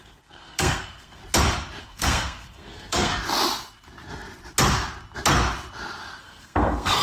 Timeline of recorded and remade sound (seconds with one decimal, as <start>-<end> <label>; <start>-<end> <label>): 0.0-1.2 remade; 1.2-1.8 recorded; 1.8-3.1 remade; 3.1-6.2 recorded; 6.2-7.0 remade